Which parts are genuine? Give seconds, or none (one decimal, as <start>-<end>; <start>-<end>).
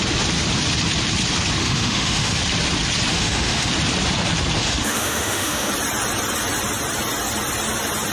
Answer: 0.0-1.6; 2.4-3.1; 3.7-4.6; 5.7-8.1